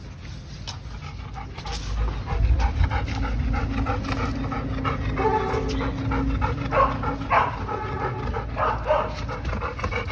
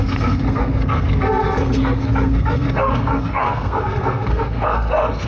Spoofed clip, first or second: second